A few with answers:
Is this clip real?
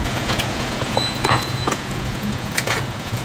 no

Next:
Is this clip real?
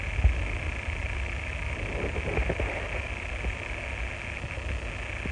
yes